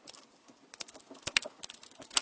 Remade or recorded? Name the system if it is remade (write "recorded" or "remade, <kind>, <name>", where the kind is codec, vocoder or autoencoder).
recorded